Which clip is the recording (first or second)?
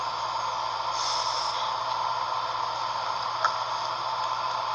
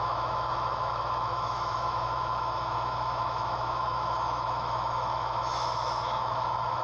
first